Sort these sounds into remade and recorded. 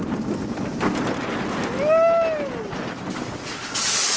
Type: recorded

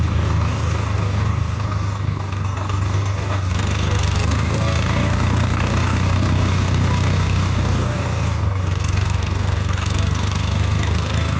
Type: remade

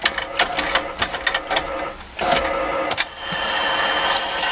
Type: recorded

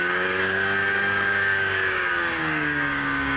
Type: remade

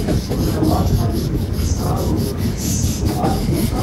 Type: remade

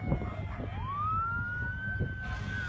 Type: recorded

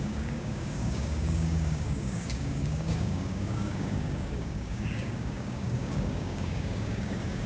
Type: remade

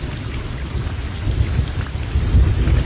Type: recorded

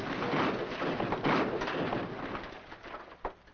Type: recorded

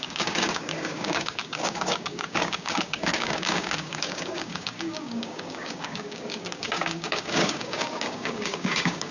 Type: remade